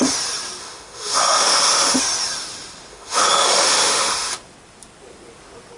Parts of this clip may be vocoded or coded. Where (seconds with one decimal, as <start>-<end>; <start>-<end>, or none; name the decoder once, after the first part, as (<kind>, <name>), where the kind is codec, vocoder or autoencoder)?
0.6-2.0 (autoencoder, DAC-VAE); 2.9-4.3